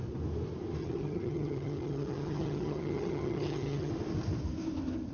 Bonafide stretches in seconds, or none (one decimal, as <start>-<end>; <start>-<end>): 0.0-0.8; 3.9-5.1